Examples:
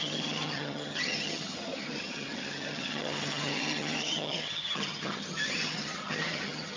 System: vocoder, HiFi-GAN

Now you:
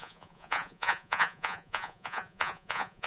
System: vocoder, Vocos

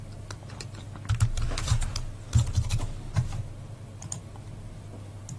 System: none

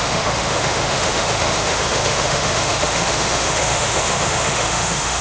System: autoencoder, DAC-VAE